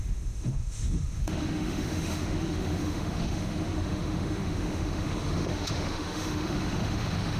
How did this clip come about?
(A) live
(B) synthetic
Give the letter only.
B